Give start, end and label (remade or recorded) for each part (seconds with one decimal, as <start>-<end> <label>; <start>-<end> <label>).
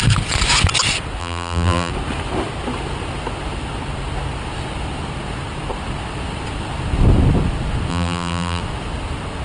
0.0-1.2 recorded; 1.2-1.9 remade; 1.9-7.9 recorded; 7.9-8.6 remade; 8.6-9.4 recorded